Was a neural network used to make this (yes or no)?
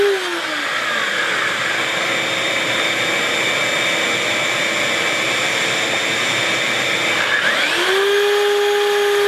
no